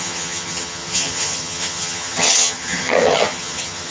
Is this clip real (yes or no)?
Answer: no